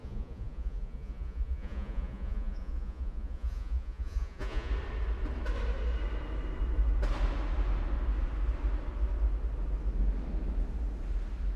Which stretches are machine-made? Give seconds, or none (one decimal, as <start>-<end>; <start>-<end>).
0.0-4.7